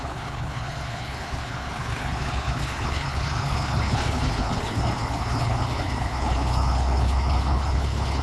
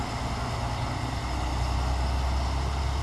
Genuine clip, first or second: second